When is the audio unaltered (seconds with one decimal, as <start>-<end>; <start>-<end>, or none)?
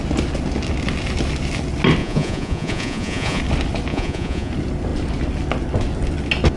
0.0-2.0; 3.4-3.9; 4.5-6.6